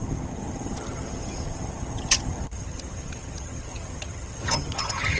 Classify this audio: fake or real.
fake